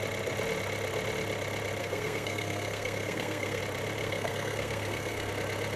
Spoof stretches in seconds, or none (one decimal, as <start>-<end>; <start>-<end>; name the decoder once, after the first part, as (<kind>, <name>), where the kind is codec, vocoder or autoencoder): 1.8-3.6 (codec, SNAC); 4.0-5.3